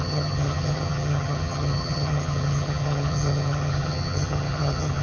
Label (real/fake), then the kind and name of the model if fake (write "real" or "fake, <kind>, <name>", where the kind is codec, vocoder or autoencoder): fake, vocoder, HiFi-GAN